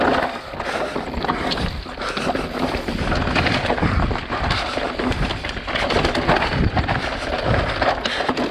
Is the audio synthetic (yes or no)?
no